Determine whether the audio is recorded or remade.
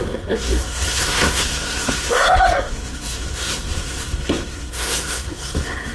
remade